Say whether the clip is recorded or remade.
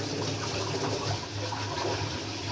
recorded